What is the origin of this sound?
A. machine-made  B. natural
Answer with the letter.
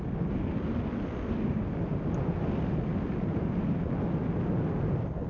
B